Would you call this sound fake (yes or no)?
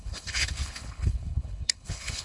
yes